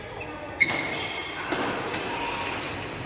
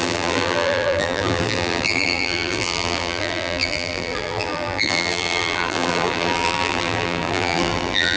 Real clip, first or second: first